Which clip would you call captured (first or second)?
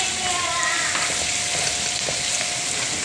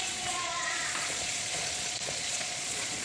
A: first